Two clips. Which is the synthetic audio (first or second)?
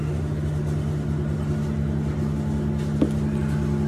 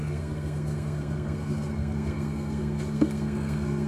second